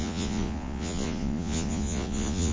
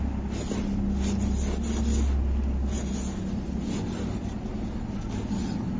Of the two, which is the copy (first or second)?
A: first